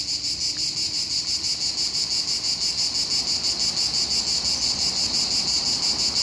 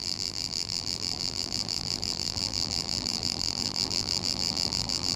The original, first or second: first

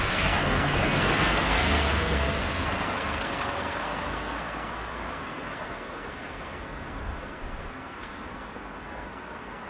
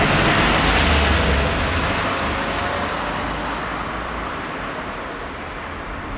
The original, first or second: second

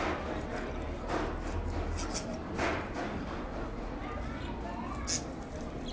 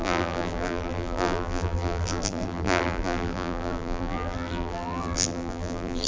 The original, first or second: first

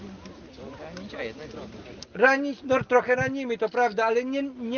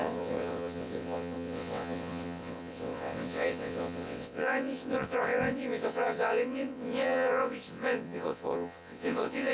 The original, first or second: first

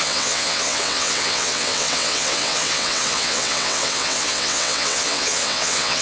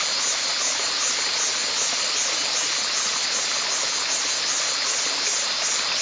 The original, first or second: second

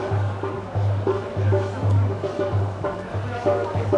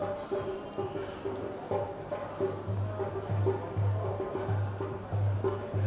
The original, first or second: second